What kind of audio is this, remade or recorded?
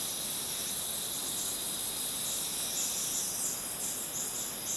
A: recorded